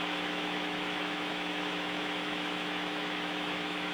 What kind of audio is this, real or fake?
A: fake